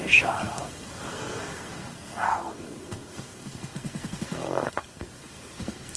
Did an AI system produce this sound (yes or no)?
yes